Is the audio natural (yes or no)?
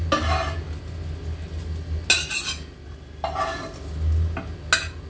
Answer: yes